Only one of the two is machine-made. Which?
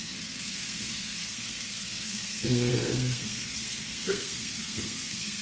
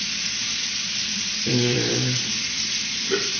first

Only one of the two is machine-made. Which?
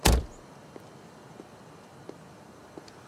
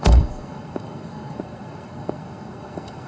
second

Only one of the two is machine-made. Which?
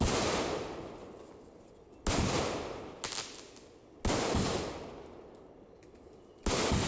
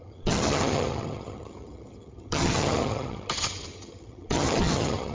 second